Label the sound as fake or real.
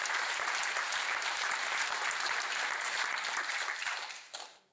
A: fake